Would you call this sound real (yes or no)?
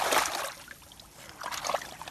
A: yes